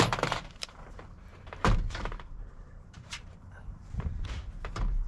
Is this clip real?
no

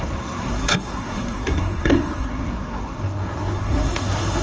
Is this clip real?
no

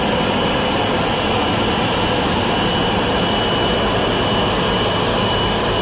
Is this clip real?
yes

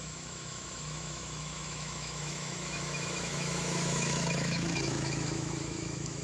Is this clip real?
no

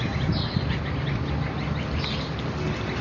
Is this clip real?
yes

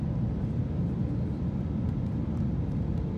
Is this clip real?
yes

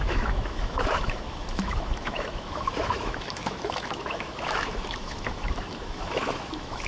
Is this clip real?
no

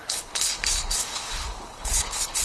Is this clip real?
no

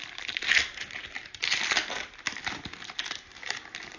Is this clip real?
yes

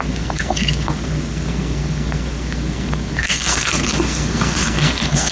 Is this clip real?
no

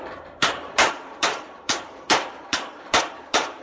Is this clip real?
no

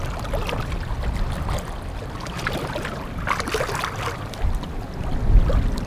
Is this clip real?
yes